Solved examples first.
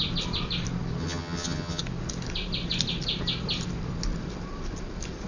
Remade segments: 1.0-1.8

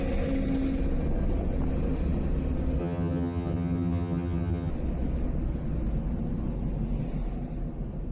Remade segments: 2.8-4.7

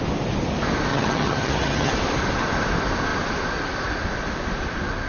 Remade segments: 0.9-1.9

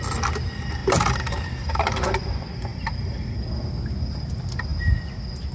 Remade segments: none

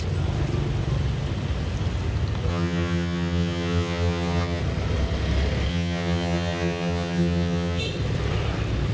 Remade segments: 2.5-4.6; 5.7-7.8

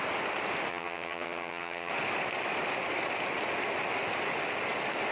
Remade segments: 0.7-1.9

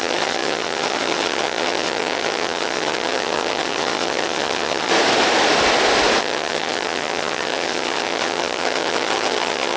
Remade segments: 0.0-4.9; 6.2-9.8